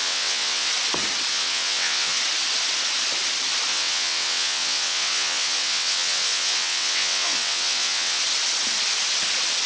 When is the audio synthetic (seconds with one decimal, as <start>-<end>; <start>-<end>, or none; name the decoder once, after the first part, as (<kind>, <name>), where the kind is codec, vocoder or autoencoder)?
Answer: 0.0-0.7 (vocoder, WaveNeXt); 1.3-2.2; 3.7-8.2